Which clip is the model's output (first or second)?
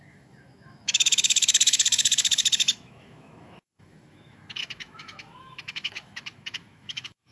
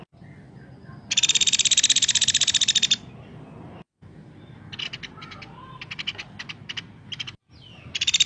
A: first